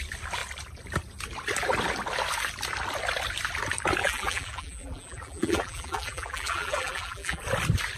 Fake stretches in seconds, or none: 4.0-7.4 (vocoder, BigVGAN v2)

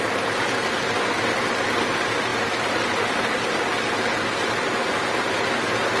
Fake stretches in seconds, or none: none

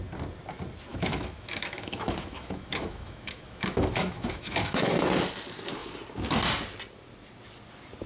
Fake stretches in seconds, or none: 0.9-4.9 (autoencoder, DAC-VAE)

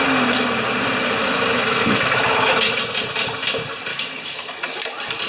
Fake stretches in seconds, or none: 1.2-2.8 (autoencoder, DAC-VAE); 3.9-4.6

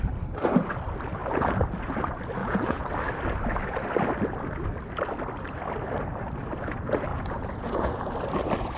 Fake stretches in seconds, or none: 2.4-2.9 (vocoder, Vocos); 7.1-8.1

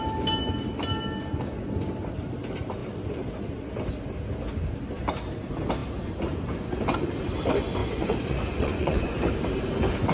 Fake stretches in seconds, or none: 7.8-9.2 (vocoder, Vocos)

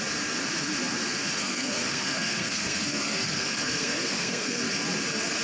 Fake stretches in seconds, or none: 1.4-4.6 (codec, SNAC)

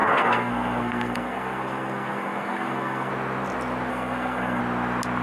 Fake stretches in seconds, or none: 0.0-3.1 (codec, SNAC); 3.9-4.6